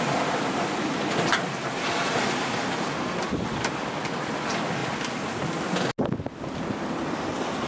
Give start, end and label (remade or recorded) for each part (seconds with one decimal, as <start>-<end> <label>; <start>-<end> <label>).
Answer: 0.0-7.7 recorded